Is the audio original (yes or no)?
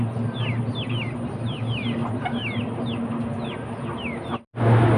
yes